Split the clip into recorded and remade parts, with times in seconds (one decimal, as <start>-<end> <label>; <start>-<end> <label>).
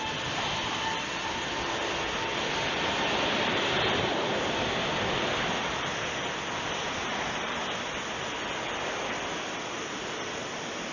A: 0.0-10.9 recorded